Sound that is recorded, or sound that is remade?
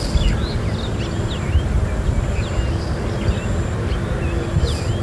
recorded